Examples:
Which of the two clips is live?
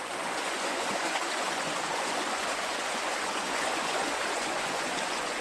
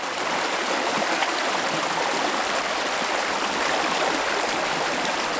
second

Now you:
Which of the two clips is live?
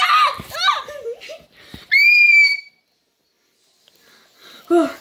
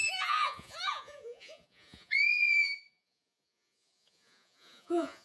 first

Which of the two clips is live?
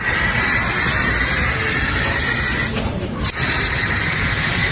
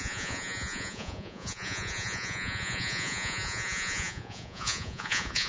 first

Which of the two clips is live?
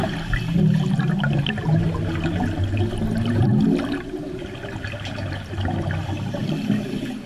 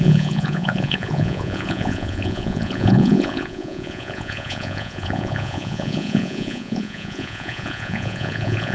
first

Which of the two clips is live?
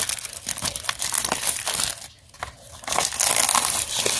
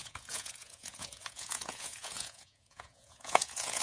first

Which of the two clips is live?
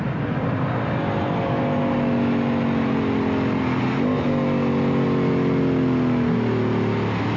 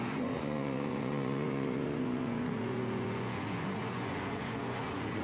first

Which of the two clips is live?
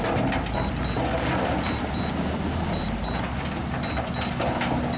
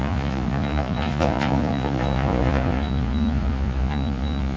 first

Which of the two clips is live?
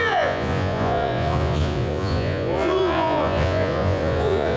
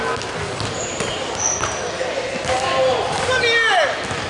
second